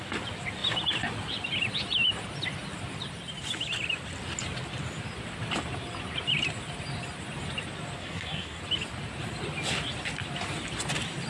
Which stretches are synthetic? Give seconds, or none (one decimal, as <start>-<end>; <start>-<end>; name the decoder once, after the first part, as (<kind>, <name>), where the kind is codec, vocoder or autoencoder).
8.0-8.6 (codec, SNAC)